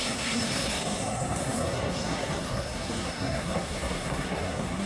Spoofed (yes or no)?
yes